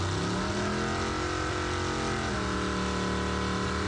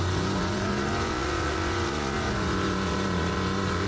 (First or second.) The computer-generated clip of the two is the second